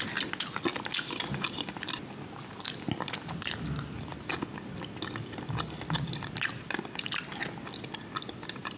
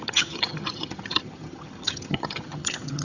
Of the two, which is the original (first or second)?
first